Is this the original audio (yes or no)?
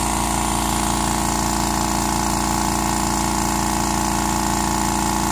yes